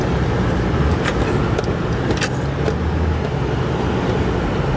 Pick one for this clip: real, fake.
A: real